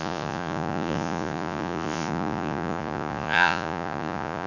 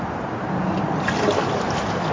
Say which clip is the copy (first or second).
first